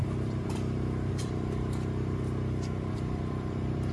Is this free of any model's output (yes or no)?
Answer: no